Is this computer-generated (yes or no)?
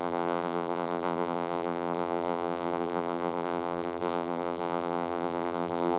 yes